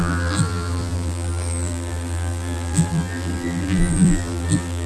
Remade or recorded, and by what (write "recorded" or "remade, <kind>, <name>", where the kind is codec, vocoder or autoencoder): remade, vocoder, BigVGAN v2